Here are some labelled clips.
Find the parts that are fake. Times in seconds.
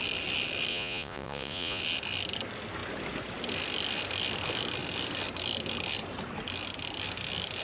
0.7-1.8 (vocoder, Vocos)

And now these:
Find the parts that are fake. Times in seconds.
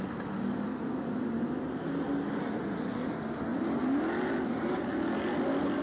none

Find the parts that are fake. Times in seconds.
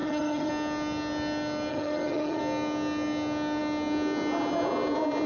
0.0-0.5 (vocoder, HiFi-GAN); 1.7-2.4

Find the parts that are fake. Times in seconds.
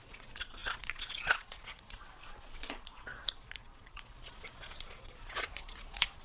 0.0-6.2 (vocoder, Vocos)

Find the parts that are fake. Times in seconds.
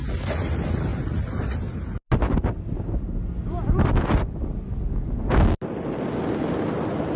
none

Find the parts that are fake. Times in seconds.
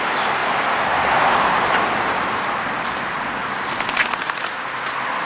3.4-4.4 (vocoder, BigVGAN v2)